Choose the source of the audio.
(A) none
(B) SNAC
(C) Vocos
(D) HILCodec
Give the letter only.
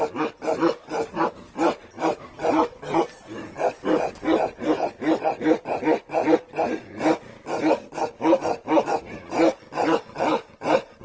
A